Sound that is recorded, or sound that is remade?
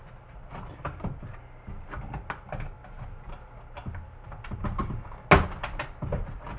recorded